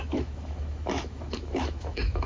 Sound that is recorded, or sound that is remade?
remade